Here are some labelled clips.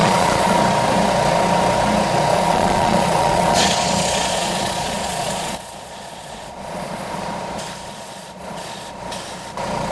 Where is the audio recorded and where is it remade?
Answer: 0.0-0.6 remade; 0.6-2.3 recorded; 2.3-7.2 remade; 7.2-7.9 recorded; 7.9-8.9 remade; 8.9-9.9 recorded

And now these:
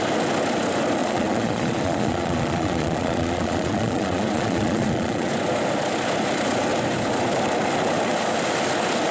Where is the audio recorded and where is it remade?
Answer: 0.0-1.0 recorded; 1.0-5.3 remade; 5.3-9.1 recorded

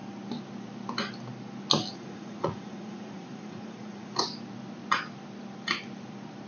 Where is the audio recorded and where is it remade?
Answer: 0.0-1.9 recorded; 1.9-4.2 remade; 4.2-6.5 recorded

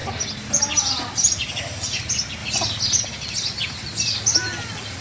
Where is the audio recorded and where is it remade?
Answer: 0.0-5.0 recorded

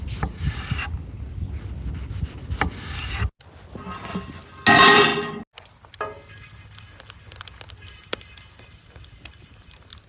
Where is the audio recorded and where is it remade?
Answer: 0.0-10.1 recorded

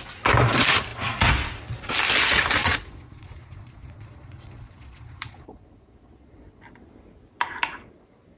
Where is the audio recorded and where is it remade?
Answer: 0.0-2.6 recorded; 2.6-6.6 remade; 6.6-8.4 recorded